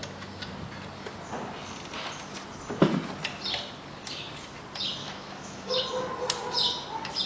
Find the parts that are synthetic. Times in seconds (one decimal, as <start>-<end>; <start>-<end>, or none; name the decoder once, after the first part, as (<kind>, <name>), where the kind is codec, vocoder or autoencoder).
5.0-5.8 (autoencoder, DAC-VAE)